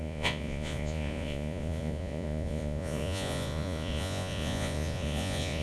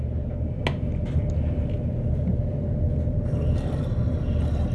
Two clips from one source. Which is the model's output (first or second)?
first